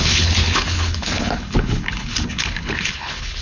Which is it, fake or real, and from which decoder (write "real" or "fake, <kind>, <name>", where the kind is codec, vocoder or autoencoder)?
fake, codec, HILCodec